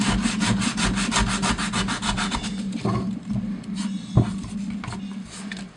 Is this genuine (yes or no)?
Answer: yes